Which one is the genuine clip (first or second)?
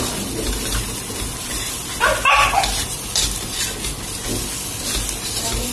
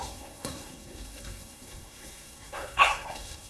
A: first